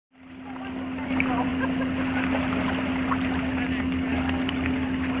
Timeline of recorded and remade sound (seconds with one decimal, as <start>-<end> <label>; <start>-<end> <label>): 0.0-5.2 recorded